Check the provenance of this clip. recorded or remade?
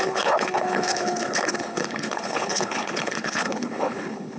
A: remade